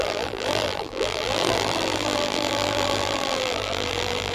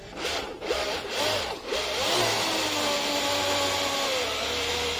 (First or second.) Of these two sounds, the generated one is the first